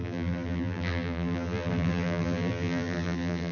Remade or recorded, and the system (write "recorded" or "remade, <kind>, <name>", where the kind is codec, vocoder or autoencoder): remade, vocoder, BigVGAN v2